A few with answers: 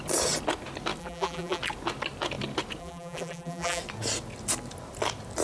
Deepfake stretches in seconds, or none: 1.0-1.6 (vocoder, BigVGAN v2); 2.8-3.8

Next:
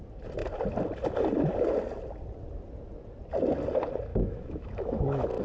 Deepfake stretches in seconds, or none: 4.1-5.4 (autoencoder, DAC-VAE)

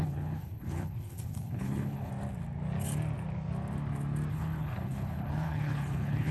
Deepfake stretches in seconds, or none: 0.0-2.1 (codec, HILCodec); 4.3-6.3